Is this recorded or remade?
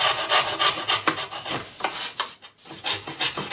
recorded